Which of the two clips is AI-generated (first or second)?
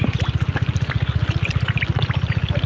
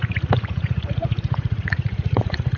second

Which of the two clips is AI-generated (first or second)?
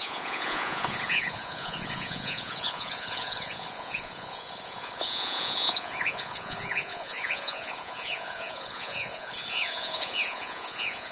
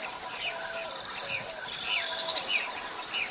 first